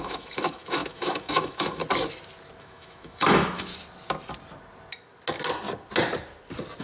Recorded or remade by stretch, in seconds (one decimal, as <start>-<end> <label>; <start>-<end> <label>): 0.0-1.8 remade; 1.8-2.6 recorded; 2.6-3.7 remade; 3.7-6.8 recorded